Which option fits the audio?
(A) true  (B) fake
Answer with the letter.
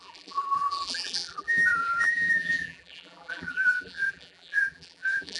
B